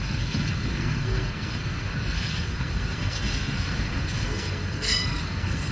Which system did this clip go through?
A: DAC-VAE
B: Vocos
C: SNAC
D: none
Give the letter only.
C